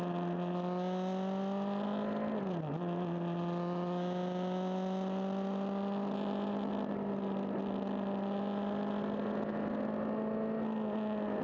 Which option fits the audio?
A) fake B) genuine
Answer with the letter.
B